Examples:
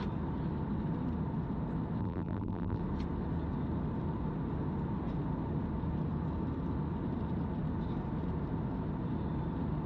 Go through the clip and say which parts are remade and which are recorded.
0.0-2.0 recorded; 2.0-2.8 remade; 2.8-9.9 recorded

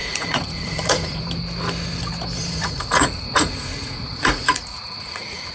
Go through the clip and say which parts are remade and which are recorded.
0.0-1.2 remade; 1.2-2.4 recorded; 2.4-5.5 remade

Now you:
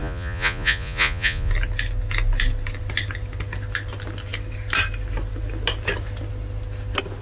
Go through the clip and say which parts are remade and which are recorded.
0.0-1.5 remade; 1.5-7.2 recorded